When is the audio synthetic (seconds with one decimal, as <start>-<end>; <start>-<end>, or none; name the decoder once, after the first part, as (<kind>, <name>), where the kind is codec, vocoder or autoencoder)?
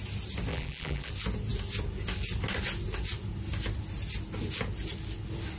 0.5-1.1 (vocoder, BigVGAN v2)